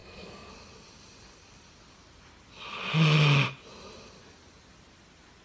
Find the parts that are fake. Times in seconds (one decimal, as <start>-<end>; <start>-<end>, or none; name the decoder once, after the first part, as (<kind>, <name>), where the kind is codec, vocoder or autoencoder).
0.0-0.5 (codec, SNAC)